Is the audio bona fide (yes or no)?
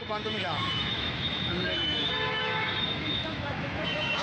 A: no